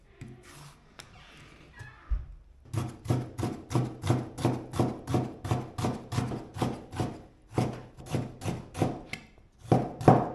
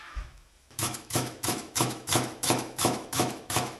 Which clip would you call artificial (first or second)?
second